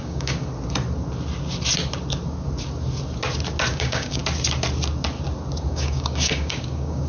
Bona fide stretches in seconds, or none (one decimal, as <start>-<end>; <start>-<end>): 0.5-3.7; 4.2-5.7